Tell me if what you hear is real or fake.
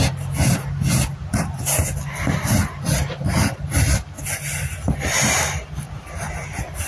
real